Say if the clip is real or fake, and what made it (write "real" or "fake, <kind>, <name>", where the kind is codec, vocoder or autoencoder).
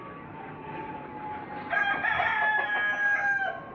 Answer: real